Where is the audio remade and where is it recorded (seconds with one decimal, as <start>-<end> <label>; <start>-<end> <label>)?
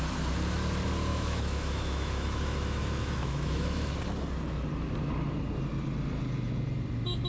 0.0-1.1 recorded; 1.1-3.9 remade; 3.9-7.3 recorded